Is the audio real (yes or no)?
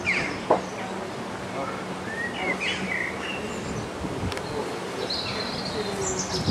yes